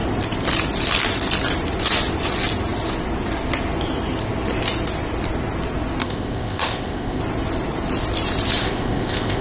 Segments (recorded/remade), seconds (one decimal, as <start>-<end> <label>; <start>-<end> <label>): 0.0-6.0 recorded; 6.0-7.2 remade; 7.2-8.6 recorded; 8.6-9.4 remade